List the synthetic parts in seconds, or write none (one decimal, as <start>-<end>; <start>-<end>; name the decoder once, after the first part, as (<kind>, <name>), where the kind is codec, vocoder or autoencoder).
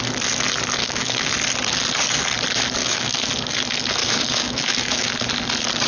0.8-1.3 (autoencoder, DAC-VAE); 2.8-3.3; 4.0-5.1